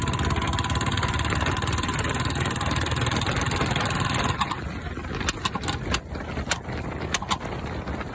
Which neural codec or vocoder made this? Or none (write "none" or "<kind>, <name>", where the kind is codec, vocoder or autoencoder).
vocoder, BigVGAN v2